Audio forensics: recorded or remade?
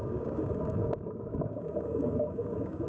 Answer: remade